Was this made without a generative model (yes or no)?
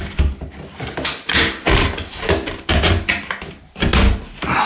yes